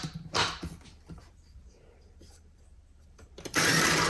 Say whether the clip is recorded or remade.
remade